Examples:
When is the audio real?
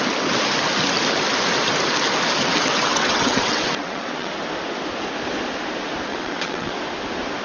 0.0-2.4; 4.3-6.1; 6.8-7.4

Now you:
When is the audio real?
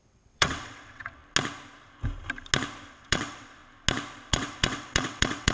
1.2-2.9; 3.6-4.3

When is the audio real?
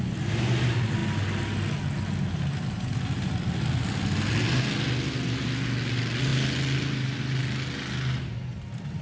0.0-9.0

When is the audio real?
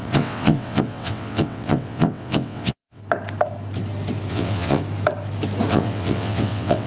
3.0-4.3; 4.8-5.7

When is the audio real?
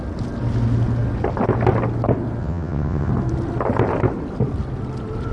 0.0-2.4; 3.1-5.3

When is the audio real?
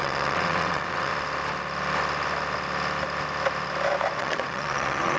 1.1-4.2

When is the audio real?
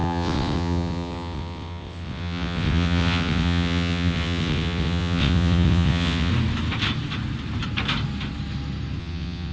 6.3-9.0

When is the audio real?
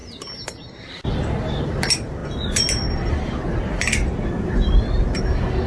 0.0-5.7